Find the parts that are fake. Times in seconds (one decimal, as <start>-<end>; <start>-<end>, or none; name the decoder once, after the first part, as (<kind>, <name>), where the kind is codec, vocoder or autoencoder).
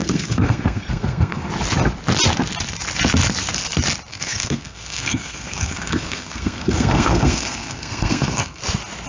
0.0-1.5 (codec, SNAC); 4.1-8.6